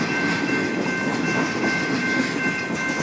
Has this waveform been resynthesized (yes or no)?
no